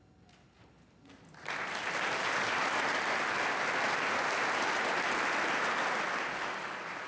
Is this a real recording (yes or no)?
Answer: yes